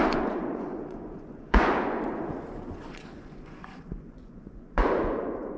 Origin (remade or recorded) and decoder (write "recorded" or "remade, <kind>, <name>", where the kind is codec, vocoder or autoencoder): remade, vocoder, Vocos